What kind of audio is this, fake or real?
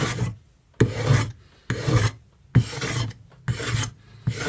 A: real